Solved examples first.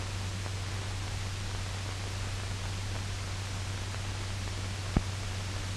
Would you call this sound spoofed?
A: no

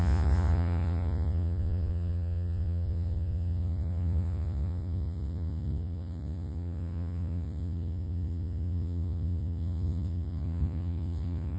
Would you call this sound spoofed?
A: yes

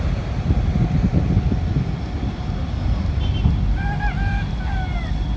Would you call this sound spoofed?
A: no